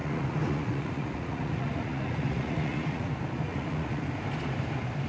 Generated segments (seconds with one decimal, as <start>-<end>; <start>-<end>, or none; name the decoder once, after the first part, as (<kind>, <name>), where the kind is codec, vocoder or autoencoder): 0.0-3.1 (vocoder, Vocos); 3.5-4.0